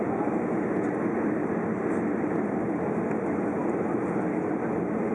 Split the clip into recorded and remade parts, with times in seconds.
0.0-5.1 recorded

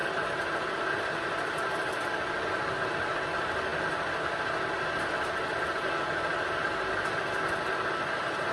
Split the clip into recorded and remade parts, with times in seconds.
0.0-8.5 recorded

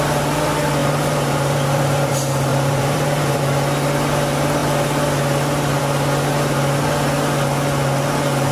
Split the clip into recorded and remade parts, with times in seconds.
0.0-0.8 recorded; 0.8-2.1 remade; 2.1-2.5 recorded; 2.5-3.4 remade; 3.4-8.5 recorded

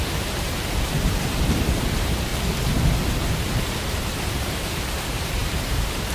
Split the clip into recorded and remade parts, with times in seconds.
0.0-2.3 remade; 2.3-3.3 recorded; 3.3-6.1 remade

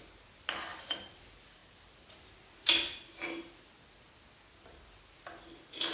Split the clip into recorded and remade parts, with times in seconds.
0.0-0.7 recorded; 0.7-1.2 remade; 1.2-5.9 recorded

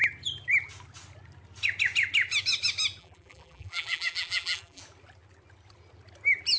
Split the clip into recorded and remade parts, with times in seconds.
0.0-3.0 recorded; 3.0-4.8 remade; 4.8-6.6 recorded